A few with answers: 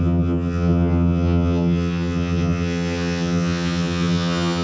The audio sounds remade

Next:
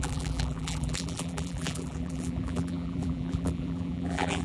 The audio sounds remade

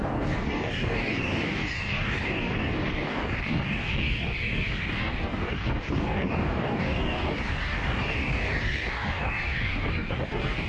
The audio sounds remade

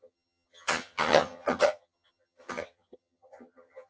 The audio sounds remade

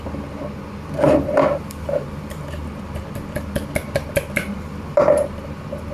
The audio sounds remade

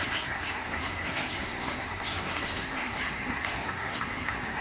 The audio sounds remade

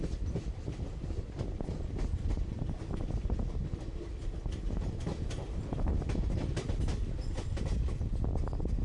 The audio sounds remade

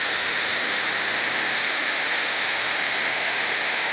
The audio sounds remade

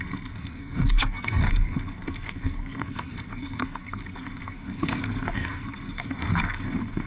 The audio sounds remade